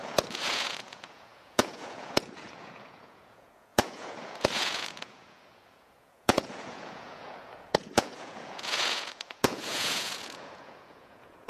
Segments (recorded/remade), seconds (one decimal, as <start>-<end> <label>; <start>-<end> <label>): 0.0-11.5 remade